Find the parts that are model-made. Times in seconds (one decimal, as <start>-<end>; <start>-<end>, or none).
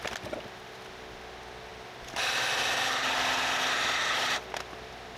none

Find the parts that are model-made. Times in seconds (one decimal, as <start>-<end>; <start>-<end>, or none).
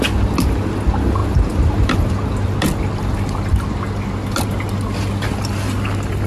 none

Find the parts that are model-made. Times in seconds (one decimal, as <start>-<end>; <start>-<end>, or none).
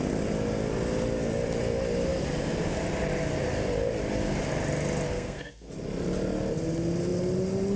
5.1-5.7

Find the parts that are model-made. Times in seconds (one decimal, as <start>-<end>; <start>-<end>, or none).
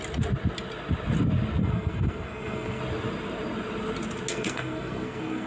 1.6-2.8; 4.3-5.5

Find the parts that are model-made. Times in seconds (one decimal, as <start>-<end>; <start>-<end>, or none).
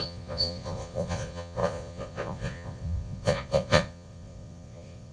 0.0-5.1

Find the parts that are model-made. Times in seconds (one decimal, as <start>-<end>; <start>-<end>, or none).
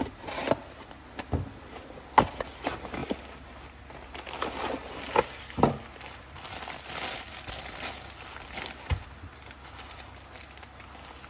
none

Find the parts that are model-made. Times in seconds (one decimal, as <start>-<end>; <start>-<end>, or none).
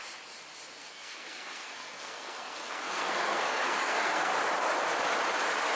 0.8-4.3